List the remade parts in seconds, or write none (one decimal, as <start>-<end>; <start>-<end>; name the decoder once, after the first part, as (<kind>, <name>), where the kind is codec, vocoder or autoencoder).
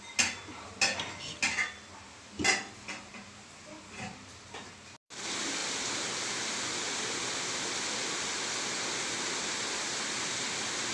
none